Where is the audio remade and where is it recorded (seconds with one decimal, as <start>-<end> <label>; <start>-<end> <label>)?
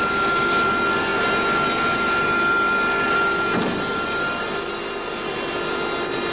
0.0-6.3 recorded